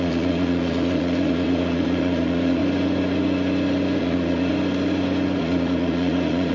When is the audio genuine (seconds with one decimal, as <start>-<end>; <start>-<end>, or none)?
2.6-4.0; 4.5-5.4